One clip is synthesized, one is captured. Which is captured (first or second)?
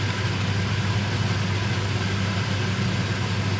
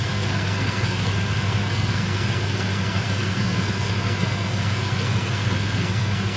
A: first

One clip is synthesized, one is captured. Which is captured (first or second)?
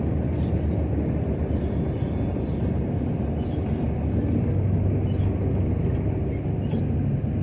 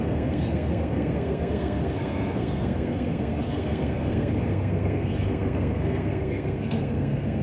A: first